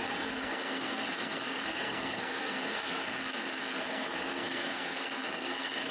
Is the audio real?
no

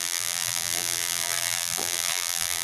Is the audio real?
no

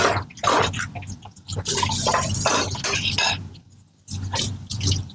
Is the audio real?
no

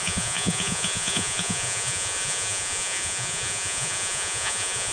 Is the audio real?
no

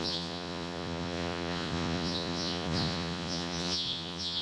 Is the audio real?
no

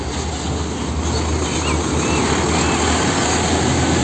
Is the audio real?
yes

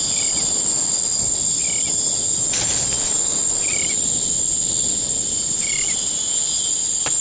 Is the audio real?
yes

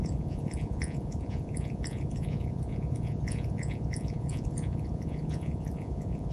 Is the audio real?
no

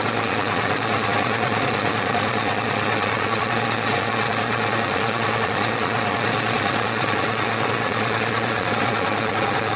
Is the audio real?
no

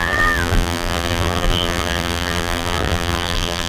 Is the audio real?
no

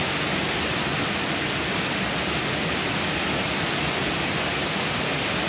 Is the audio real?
yes